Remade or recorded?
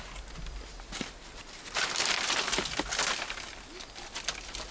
recorded